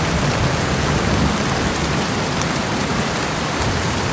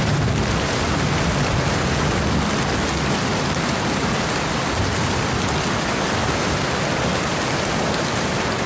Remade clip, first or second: first